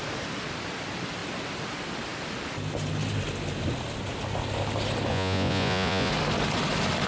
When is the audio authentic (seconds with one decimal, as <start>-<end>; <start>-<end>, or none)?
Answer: 0.0-5.1; 6.1-7.1